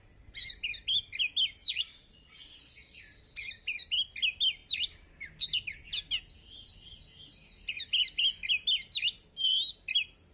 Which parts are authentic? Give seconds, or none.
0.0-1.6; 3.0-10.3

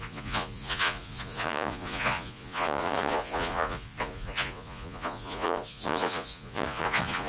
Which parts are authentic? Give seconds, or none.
none

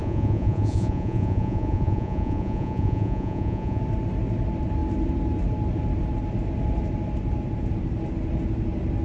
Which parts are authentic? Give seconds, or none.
3.8-9.0

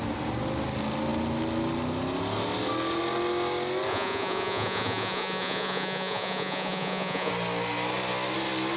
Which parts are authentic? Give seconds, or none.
0.0-3.9; 7.3-8.8